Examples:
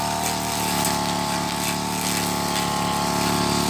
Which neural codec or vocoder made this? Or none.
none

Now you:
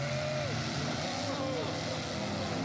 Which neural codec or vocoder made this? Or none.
none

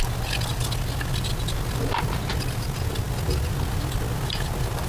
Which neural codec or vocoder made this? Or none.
none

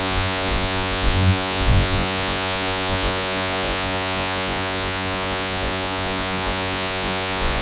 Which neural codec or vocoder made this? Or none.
vocoder, Vocos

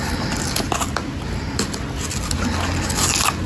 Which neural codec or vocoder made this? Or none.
none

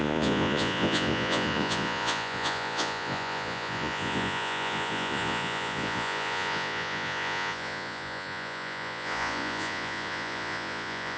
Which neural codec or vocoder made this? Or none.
vocoder, Vocos